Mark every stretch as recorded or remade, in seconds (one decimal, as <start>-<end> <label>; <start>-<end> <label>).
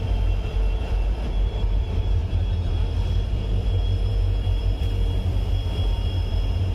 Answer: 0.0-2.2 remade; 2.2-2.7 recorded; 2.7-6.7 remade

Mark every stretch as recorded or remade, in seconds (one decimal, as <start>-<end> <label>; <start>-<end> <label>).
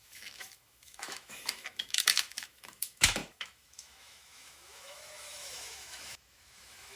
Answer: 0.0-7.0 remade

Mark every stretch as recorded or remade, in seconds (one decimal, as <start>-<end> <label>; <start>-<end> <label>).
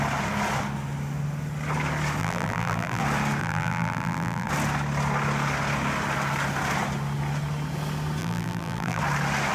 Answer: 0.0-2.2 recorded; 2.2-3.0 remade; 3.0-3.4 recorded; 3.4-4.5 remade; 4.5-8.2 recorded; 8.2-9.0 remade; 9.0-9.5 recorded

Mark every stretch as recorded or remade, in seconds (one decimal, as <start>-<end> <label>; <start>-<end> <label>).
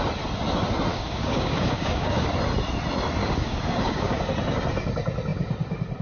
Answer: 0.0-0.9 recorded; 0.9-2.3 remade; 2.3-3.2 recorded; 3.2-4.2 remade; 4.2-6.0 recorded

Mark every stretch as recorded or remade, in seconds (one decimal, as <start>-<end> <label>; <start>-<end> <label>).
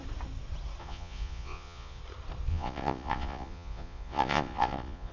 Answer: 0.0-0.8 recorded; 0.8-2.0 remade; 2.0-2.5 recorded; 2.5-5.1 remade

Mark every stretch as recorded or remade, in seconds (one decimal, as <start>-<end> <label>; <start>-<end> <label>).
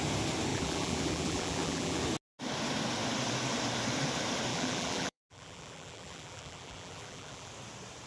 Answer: 0.0-0.5 recorded; 0.5-2.0 remade; 2.0-4.5 recorded; 4.5-7.5 remade; 7.5-8.1 recorded